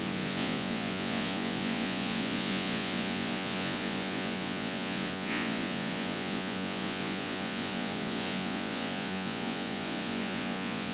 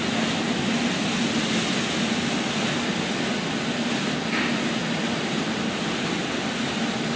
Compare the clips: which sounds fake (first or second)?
first